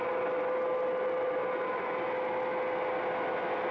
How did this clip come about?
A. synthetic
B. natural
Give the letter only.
B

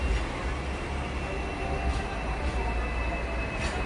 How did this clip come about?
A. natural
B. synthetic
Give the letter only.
A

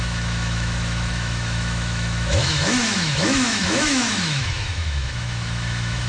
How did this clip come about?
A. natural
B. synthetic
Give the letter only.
B